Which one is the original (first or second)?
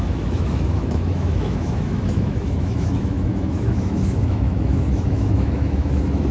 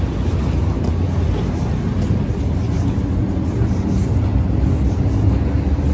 second